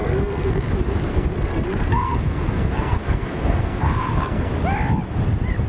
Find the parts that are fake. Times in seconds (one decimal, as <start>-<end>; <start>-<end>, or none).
0.0-0.6; 1.1-4.5